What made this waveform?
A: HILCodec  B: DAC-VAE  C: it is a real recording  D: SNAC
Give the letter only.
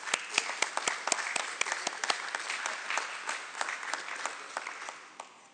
C